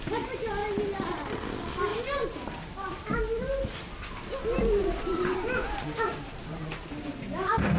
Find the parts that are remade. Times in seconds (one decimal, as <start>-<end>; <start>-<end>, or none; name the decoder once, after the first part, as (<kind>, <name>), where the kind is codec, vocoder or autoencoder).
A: 1.9-3.2 (vocoder, BigVGAN v2); 4.8-6.9